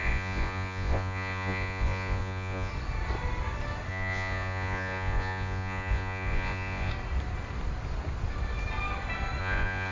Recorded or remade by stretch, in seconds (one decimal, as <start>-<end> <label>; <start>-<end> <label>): 0.0-2.7 remade; 2.7-3.9 recorded; 3.9-6.9 remade; 6.9-9.4 recorded; 9.4-9.9 remade